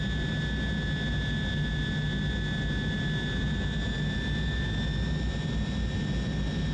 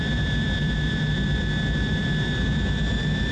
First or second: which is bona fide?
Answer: first